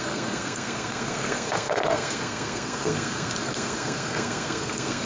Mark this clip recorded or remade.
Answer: remade